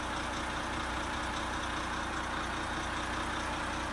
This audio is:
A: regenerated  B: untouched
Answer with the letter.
B